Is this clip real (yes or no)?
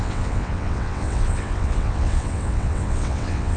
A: no